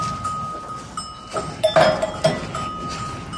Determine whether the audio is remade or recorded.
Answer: recorded